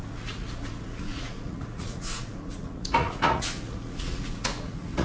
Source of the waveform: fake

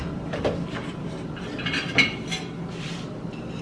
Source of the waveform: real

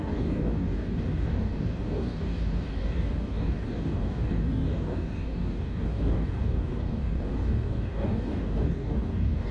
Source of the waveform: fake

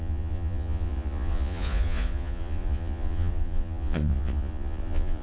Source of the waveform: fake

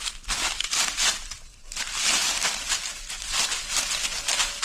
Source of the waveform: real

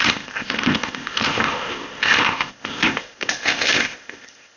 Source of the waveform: fake